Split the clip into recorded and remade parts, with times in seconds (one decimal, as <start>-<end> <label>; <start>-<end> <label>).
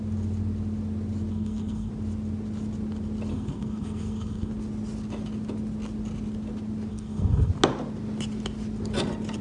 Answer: 0.0-1.3 recorded; 1.3-1.9 remade; 1.9-3.3 recorded; 3.3-4.5 remade; 4.5-6.9 recorded; 6.9-7.5 remade; 7.5-9.4 recorded